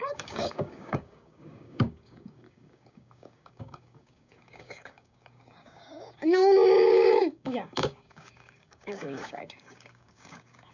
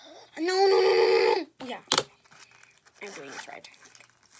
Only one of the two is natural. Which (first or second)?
second